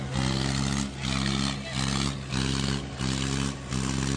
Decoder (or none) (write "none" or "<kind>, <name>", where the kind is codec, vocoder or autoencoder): none